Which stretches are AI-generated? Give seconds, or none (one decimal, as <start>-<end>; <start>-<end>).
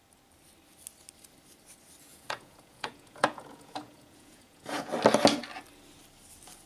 2.1-4.9